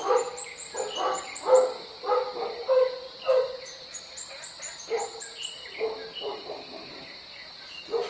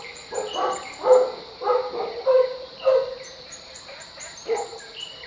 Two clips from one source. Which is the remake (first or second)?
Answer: second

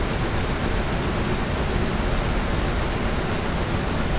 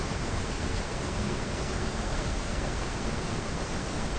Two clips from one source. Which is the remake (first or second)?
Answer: second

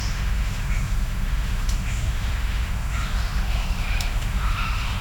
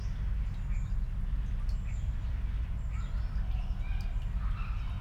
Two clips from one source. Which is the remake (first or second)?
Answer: first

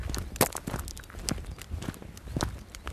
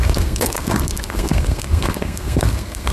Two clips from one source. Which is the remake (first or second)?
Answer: second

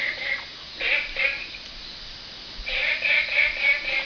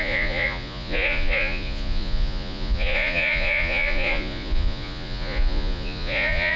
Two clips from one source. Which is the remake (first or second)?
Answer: second